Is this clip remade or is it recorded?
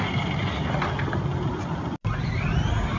recorded